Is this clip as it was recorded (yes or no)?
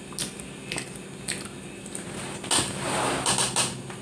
yes